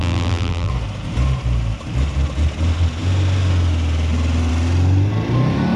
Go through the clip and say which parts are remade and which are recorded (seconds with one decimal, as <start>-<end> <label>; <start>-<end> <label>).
0.0-0.7 remade; 0.7-5.8 recorded